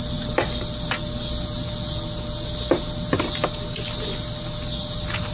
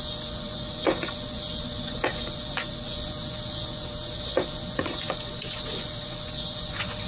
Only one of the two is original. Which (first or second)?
first